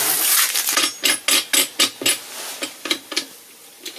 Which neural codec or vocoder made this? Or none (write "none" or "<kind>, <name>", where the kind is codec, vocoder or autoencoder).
none